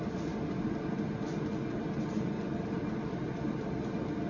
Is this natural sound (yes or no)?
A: no